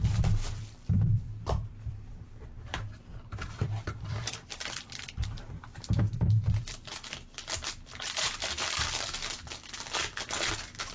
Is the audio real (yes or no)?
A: no